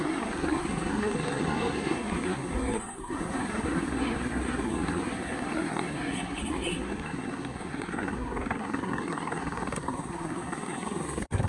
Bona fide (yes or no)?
no